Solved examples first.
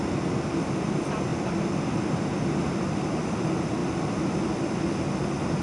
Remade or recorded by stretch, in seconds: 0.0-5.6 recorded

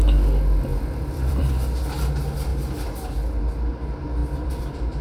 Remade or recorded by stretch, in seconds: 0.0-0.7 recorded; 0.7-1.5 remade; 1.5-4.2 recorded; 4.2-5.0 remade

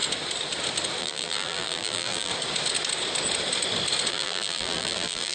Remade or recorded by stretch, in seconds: 0.0-1.0 recorded; 1.0-2.3 remade; 2.3-4.1 recorded; 4.1-5.3 remade

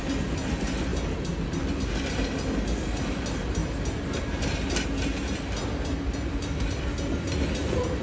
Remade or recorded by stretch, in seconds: 0.0-8.0 recorded

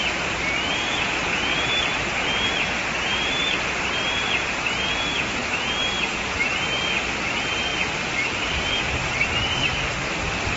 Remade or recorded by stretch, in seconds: 0.0-7.7 recorded; 7.7-8.8 remade; 8.8-10.6 recorded

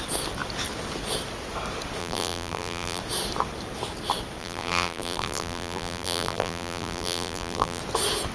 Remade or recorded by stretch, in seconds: 0.0-2.0 recorded; 2.0-3.0 remade; 3.0-4.4 recorded; 4.4-7.8 remade; 7.8-8.3 recorded